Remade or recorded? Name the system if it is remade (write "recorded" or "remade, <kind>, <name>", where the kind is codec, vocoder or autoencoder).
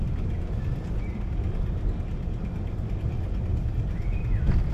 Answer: recorded